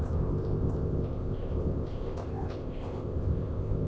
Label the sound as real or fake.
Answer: fake